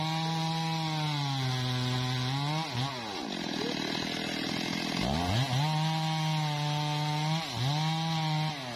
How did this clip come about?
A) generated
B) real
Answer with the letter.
B